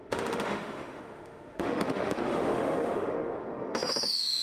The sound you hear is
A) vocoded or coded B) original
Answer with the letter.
A